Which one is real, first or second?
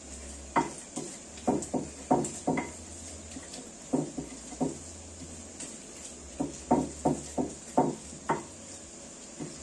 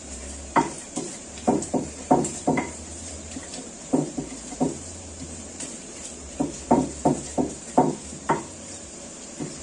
first